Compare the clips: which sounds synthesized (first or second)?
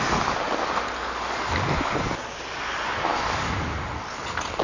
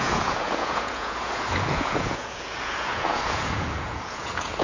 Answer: second